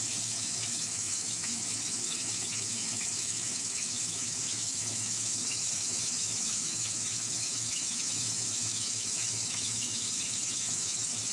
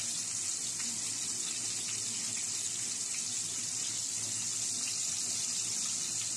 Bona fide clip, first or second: second